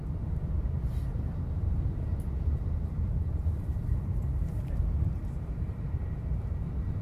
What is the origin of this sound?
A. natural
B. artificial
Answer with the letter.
B